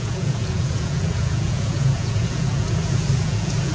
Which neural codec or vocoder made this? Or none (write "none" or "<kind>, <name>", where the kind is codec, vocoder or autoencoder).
vocoder, Vocos